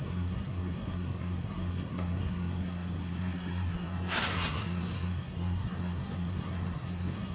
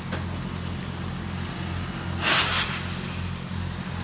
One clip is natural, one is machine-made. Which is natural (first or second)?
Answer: second